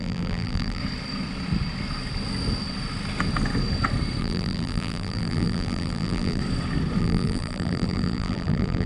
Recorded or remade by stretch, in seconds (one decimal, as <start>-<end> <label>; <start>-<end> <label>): 0.0-0.8 remade; 0.8-4.2 recorded; 4.2-6.4 remade; 6.4-7.0 recorded; 7.0-8.9 remade